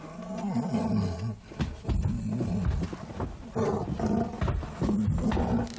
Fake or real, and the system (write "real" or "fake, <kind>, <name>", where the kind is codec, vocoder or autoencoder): real